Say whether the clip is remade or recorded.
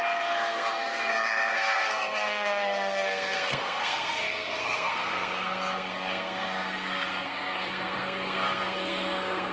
remade